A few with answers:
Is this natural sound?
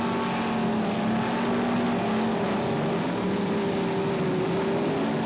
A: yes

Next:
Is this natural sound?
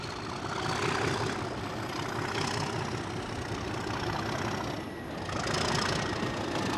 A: yes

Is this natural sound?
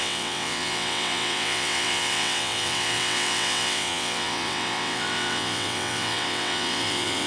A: no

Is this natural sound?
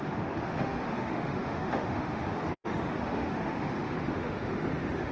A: no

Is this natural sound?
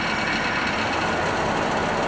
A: yes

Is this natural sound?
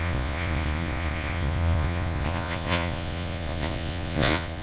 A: no